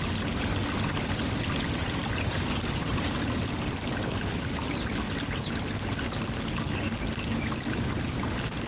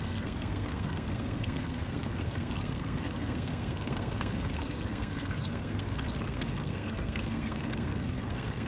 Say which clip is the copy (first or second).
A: second